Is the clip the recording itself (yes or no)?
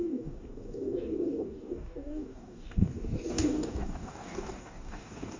no